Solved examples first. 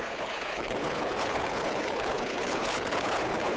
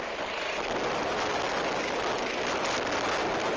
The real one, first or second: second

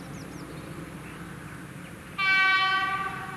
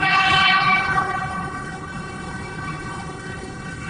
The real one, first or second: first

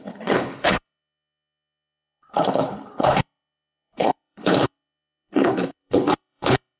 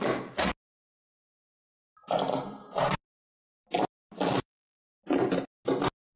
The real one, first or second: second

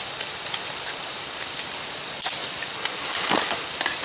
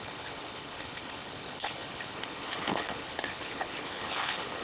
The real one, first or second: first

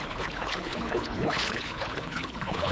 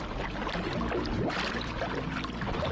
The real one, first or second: second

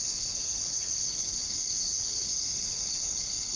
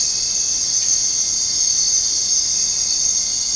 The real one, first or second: second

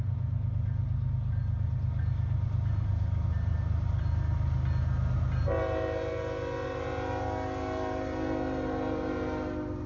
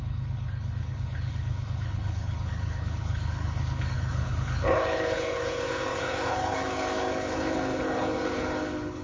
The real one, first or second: first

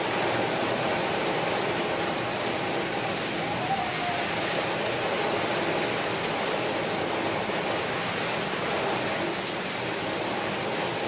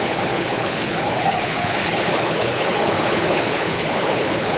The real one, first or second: first